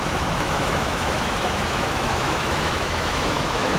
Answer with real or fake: fake